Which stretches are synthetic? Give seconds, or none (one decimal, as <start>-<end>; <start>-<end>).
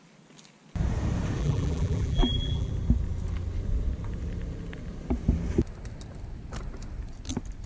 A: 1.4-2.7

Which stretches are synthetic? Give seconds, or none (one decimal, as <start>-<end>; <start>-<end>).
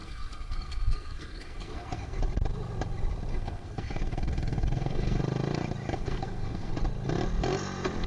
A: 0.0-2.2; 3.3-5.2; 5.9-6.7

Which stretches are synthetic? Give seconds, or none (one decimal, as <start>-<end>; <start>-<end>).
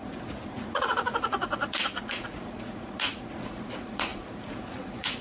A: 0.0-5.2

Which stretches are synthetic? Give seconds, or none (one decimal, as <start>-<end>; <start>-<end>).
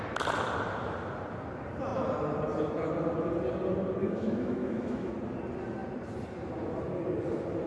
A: 4.0-5.1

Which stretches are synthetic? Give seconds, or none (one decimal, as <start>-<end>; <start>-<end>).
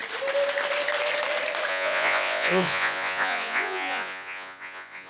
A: 1.7-5.1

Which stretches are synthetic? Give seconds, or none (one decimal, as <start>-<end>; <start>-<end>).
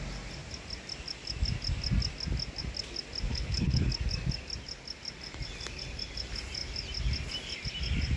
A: 3.3-3.9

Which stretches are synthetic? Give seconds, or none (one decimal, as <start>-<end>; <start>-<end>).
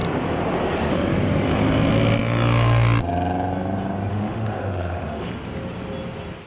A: 4.1-5.3